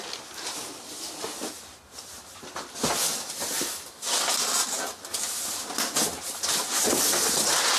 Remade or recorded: recorded